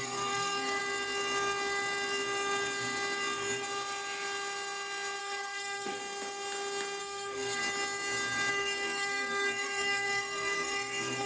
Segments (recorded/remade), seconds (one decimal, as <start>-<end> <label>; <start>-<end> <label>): 0.0-0.8 remade; 0.8-5.2 recorded; 5.2-6.0 remade; 6.0-7.0 recorded; 7.0-7.6 remade; 7.6-8.5 recorded; 8.5-11.3 remade